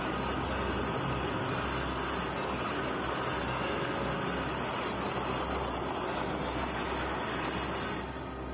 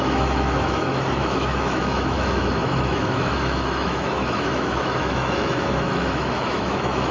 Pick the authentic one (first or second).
first